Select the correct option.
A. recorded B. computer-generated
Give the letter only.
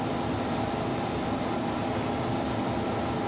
A